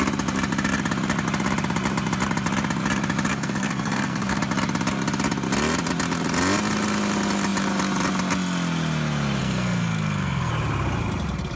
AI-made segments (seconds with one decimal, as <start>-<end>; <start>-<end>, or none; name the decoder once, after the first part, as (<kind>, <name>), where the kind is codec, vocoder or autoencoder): 3.3-4.4 (codec, SNAC); 9.4-10.5